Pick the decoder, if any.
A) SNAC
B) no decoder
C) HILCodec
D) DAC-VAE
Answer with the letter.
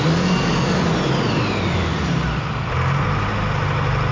B